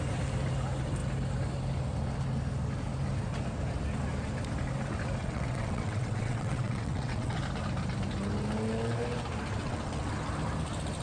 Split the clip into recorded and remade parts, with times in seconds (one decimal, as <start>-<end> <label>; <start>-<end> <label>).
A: 0.0-5.2 recorded; 5.2-7.4 remade; 7.4-9.6 recorded; 9.6-10.1 remade; 10.1-11.0 recorded